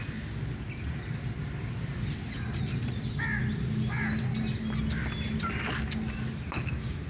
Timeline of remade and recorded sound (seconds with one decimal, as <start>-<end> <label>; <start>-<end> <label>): 0.0-7.1 recorded